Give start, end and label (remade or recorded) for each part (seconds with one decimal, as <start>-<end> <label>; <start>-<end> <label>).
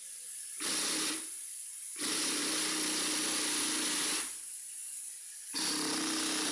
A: 0.0-6.5 recorded